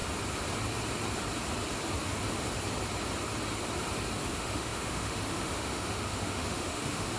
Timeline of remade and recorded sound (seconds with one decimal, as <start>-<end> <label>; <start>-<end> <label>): 0.0-4.3 recorded; 4.3-7.2 remade